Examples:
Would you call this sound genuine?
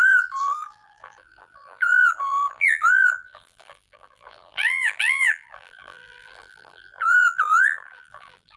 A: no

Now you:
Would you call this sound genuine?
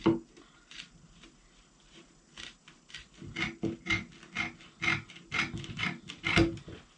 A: yes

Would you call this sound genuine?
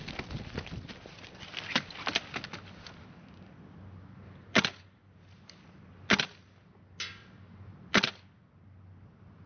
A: yes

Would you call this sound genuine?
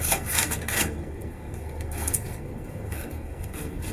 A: no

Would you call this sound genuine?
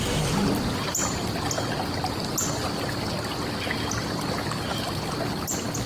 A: yes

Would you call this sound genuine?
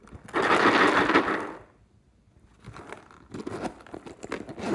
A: yes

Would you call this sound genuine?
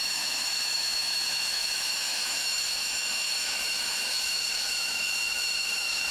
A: no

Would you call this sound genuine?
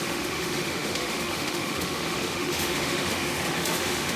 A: no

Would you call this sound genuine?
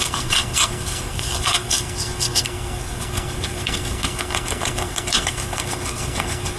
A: no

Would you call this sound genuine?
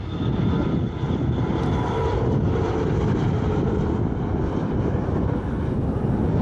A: yes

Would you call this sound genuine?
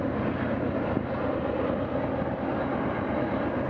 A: yes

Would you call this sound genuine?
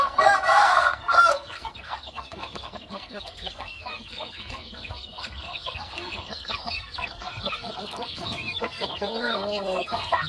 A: no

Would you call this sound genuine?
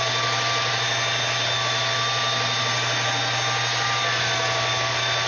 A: yes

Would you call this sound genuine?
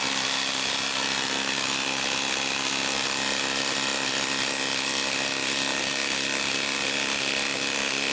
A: yes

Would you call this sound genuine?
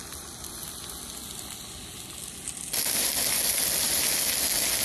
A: yes